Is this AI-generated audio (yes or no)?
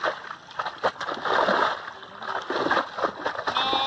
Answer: no